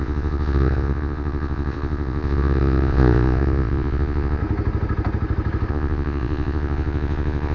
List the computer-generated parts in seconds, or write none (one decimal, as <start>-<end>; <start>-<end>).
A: 0.0-4.4; 5.7-7.5